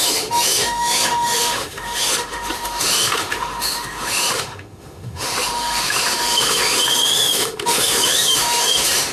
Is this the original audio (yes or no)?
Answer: no